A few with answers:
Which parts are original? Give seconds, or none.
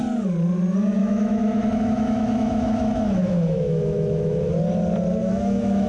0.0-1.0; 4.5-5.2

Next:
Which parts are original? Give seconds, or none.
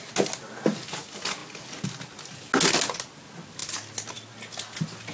0.0-5.1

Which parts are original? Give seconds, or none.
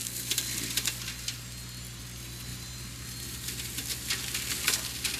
0.0-5.2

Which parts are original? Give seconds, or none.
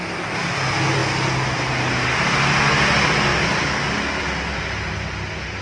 0.0-5.6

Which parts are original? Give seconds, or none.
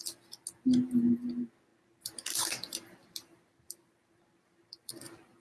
0.0-1.7; 4.9-5.4